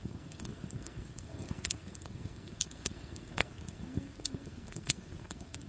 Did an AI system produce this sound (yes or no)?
yes